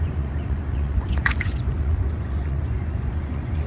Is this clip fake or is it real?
fake